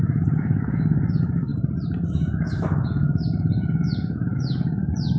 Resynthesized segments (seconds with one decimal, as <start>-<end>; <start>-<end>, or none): 0.0-1.5; 2.1-5.2